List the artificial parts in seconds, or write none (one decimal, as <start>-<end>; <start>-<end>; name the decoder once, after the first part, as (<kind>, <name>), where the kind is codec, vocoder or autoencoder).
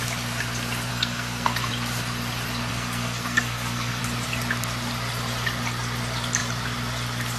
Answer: 0.9-1.7 (codec, SNAC); 2.7-4.0